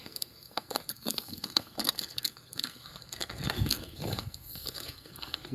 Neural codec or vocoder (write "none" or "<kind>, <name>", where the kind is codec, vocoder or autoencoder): codec, SNAC